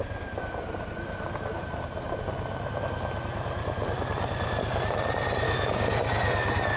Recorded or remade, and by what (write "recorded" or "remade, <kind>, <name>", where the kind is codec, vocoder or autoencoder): recorded